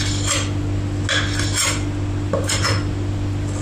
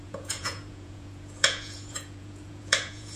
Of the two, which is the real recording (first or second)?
first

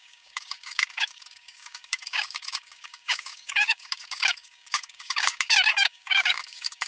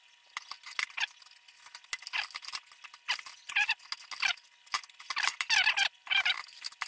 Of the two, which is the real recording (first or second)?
second